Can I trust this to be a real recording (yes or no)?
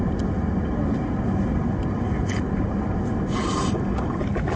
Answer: yes